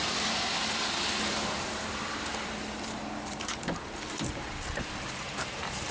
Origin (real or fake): fake